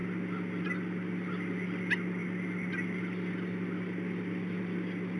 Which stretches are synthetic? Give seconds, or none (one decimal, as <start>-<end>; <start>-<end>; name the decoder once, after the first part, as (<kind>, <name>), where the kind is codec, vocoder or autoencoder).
none